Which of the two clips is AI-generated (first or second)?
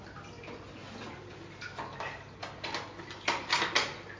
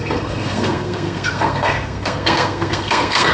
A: second